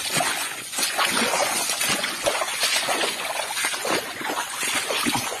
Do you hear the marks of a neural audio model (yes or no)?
yes